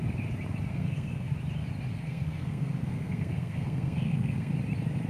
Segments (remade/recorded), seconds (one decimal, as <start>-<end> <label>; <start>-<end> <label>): 0.0-0.7 recorded; 0.7-1.3 remade; 1.3-1.9 recorded; 1.9-4.5 remade; 4.5-5.1 recorded